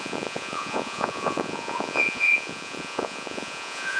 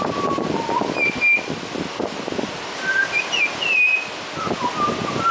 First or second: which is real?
second